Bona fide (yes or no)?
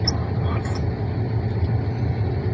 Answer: yes